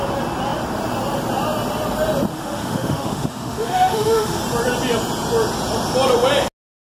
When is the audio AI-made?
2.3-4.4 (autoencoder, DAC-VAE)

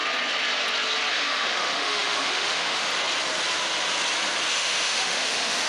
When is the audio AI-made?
1.1-2.9 (autoencoder, DAC-VAE); 4.5-5.7